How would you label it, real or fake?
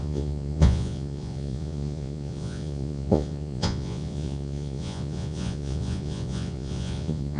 fake